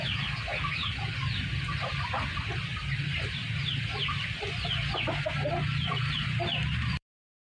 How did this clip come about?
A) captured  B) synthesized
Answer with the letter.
B